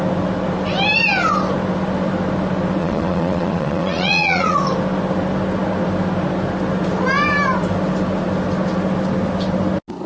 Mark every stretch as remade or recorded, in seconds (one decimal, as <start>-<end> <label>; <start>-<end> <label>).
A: 0.0-2.8 recorded; 2.8-4.6 remade; 4.6-10.1 recorded